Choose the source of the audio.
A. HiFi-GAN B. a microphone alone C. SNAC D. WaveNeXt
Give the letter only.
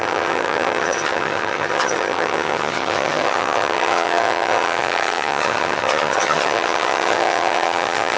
A